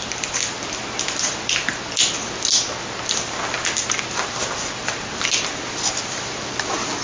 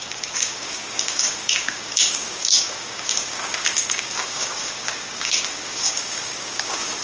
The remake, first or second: second